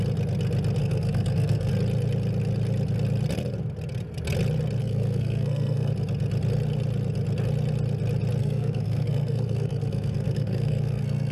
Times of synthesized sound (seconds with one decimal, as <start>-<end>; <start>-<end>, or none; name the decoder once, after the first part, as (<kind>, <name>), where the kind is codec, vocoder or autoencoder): 0.8-1.7 (codec, SNAC); 4.8-5.9; 8.4-11.3

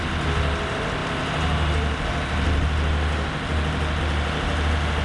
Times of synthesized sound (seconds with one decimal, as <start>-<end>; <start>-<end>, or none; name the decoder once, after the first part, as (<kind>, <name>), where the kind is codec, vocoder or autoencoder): none

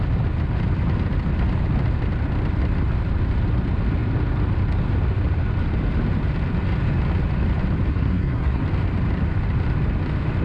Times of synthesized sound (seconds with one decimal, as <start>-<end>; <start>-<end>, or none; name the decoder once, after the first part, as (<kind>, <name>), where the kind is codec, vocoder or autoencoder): 7.9-8.6 (codec, SNAC)

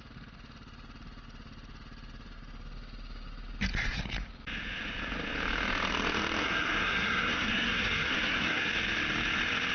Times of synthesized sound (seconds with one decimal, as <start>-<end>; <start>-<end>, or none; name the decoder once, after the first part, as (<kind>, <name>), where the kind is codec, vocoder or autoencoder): 6.4-8.7 (codec, SNAC)

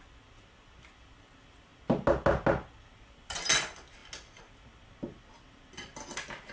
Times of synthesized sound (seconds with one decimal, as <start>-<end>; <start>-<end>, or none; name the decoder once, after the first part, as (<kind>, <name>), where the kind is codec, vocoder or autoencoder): none